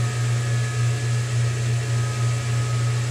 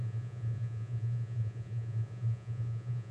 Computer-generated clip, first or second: second